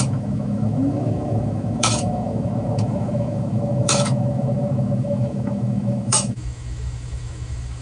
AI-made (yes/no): yes